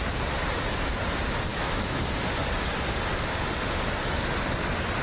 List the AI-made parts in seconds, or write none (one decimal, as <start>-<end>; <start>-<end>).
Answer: 1.5-2.0